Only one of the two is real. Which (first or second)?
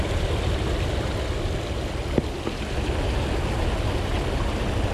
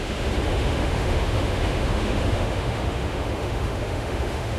first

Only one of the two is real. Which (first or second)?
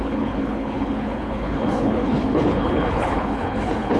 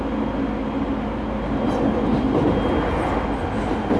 second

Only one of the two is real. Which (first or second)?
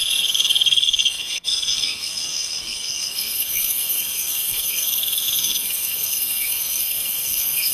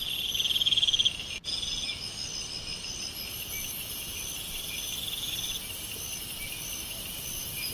second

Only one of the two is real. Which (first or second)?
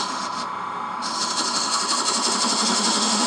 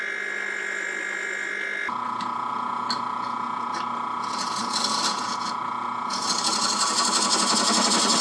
second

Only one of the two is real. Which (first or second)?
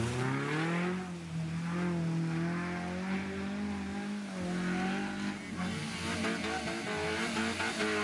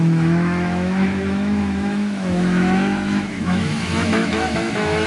first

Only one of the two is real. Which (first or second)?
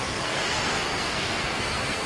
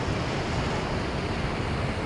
second